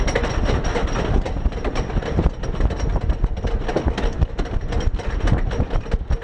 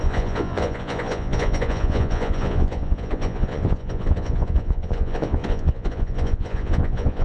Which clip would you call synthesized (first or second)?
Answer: second